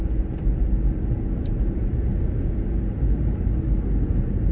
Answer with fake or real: real